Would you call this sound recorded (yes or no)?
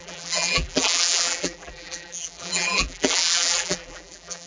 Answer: no